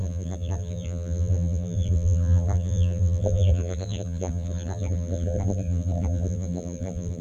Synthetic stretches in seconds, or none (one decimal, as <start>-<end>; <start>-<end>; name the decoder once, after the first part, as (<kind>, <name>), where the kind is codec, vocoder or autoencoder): 0.0-7.2 (vocoder, BigVGAN v2)